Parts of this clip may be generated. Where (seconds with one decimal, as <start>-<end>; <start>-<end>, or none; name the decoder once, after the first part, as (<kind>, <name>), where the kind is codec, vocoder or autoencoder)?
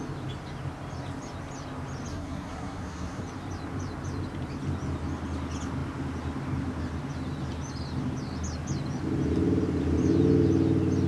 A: 2.1-3.2 (codec, SNAC)